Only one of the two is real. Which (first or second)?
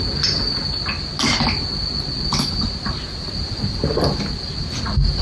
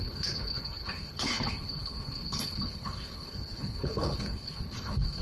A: first